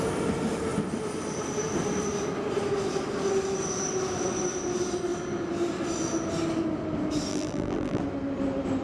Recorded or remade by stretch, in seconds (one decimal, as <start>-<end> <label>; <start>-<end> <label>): 0.0-7.3 recorded; 7.3-8.0 remade; 8.0-8.8 recorded